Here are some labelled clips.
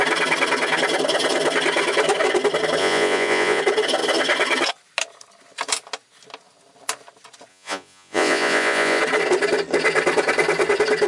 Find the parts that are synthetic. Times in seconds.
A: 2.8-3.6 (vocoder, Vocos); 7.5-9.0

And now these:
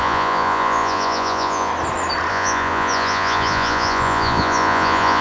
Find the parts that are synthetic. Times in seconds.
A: 0.0-1.7 (vocoder, Vocos); 2.3-5.2

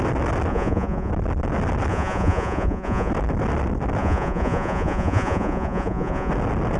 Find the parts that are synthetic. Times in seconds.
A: 0.5-1.1 (vocoder, Vocos); 1.9-3.1; 4.0-6.3

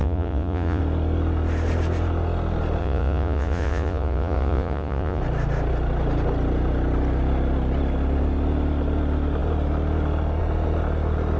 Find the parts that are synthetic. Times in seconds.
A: 0.0-0.8 (vocoder, Vocos); 2.8-5.2

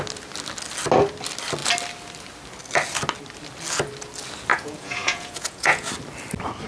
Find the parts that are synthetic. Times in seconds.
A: 4.5-5.9 (vocoder, Vocos)

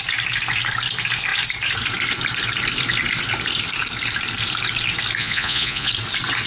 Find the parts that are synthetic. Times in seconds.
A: 5.2-5.9 (vocoder, Vocos)

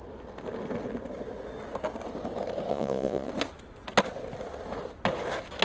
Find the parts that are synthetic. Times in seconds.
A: 2.7-3.3 (vocoder, Vocos)

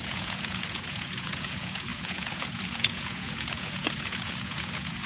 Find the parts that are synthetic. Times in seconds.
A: 0.0-5.1 (vocoder, Vocos)